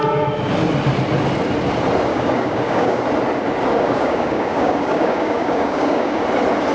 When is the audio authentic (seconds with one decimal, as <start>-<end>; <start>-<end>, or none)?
0.0-2.1; 3.0-3.7; 6.2-6.7